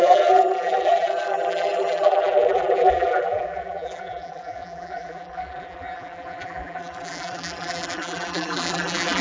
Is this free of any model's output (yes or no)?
no